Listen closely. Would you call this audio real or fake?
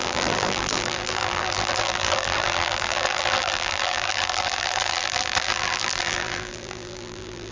fake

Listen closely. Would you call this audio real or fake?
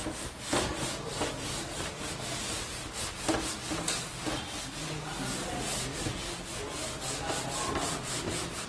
real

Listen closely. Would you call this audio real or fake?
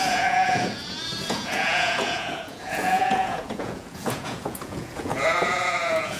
fake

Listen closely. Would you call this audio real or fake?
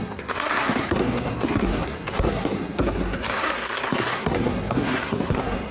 fake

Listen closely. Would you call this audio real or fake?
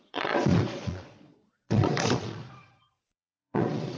fake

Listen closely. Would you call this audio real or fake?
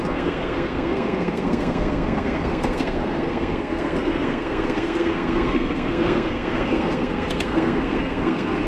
fake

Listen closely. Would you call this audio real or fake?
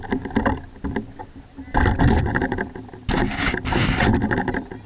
real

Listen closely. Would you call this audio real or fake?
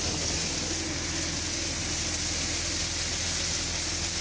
real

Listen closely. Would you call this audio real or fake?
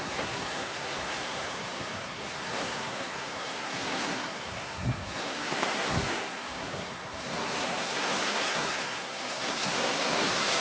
fake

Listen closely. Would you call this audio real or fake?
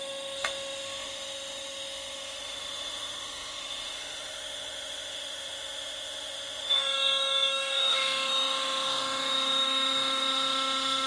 fake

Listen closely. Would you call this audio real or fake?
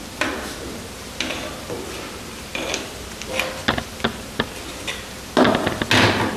real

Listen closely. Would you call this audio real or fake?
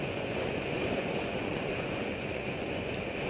fake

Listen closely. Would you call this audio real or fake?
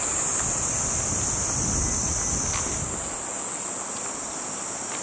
real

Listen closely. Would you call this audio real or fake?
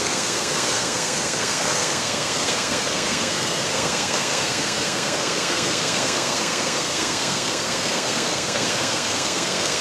fake